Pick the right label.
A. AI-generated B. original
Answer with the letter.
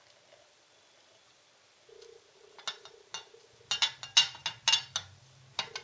B